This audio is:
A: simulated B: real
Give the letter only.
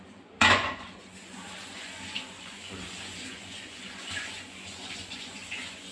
A